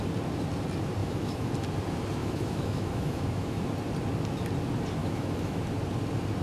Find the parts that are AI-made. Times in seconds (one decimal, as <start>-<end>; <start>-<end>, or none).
1.0-1.5; 2.2-3.6; 5.0-5.6